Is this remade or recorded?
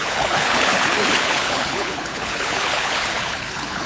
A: remade